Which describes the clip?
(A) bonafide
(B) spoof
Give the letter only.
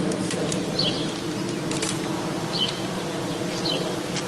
A